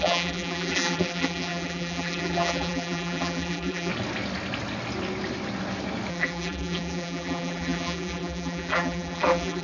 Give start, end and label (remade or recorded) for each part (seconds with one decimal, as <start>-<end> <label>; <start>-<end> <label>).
0.0-3.9 remade; 3.9-6.1 recorded; 6.1-9.6 remade